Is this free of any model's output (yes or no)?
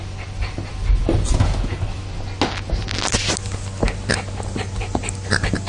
yes